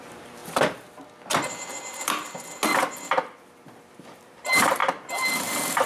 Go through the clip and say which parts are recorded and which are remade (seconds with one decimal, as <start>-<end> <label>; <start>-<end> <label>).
0.0-0.4 remade; 0.4-3.9 recorded; 3.9-5.9 remade